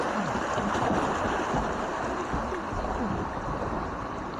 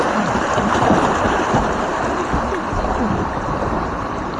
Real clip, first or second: first